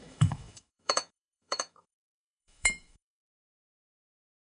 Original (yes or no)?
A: no